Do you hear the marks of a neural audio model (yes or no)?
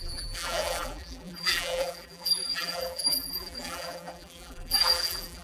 yes